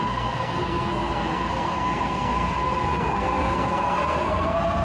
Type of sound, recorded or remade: remade